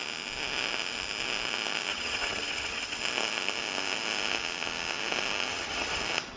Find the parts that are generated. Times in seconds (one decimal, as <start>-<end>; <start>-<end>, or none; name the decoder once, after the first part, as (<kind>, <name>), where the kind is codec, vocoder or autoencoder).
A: 1.9-3.0 (vocoder, HiFi-GAN); 5.5-6.0